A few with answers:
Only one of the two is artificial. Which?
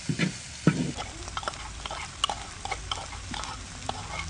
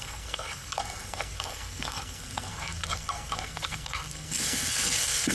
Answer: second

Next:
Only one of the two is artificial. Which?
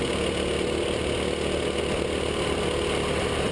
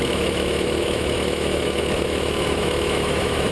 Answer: second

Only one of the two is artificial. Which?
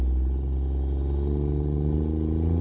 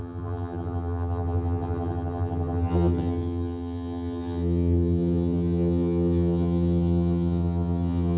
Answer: second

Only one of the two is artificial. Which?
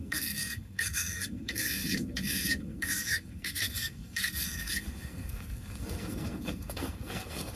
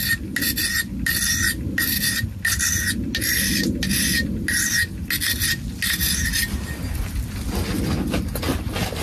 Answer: first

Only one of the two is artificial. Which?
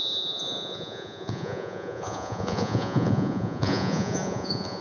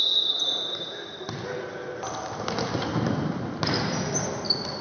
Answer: first